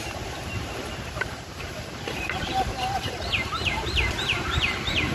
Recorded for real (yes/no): no